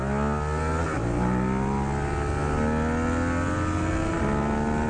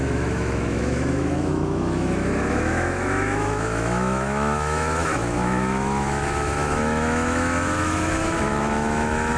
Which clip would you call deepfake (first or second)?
second